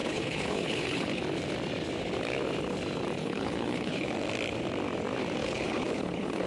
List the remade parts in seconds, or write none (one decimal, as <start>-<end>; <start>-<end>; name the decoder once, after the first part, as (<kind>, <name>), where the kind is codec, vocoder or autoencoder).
0.0-1.2 (codec, HILCodec); 3.2-4.1; 5.4-6.5